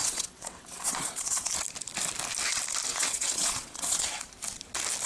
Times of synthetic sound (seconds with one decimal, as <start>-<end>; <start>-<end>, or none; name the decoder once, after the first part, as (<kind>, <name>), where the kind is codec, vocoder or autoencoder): 0.0-1.5 (vocoder, WaveNeXt); 2.9-4.2